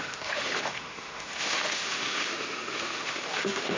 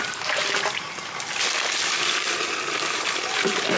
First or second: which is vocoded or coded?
first